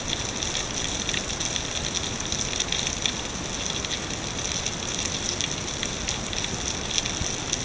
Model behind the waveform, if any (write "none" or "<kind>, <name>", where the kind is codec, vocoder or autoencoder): none